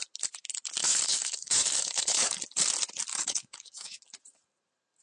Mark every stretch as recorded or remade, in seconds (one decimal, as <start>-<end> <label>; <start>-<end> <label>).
0.0-0.8 recorded; 0.8-2.4 remade; 2.4-3.1 recorded; 3.1-4.0 remade; 4.0-5.0 recorded